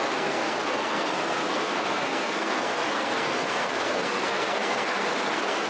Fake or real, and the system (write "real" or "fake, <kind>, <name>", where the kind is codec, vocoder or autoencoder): fake, codec, SNAC